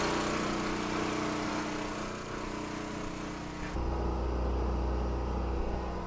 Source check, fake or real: real